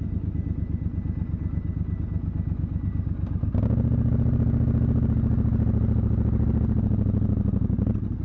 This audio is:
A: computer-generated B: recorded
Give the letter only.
B